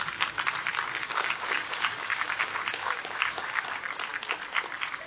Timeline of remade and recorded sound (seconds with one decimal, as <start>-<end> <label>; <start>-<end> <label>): 0.0-1.0 recorded; 1.0-3.6 remade; 3.6-5.1 recorded